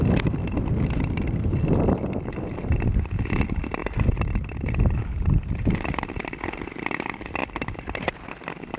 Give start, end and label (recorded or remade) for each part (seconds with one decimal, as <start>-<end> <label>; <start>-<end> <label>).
0.0-8.8 recorded